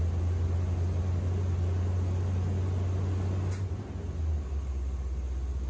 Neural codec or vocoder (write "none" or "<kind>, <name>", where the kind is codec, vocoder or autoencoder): none